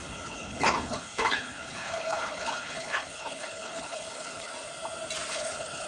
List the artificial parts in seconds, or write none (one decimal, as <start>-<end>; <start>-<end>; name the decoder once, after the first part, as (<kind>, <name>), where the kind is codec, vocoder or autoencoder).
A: 0.0-4.5 (codec, HILCodec); 5.3-5.9